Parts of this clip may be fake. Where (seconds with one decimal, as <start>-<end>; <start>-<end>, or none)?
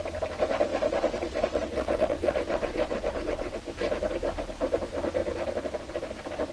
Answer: 0.7-3.6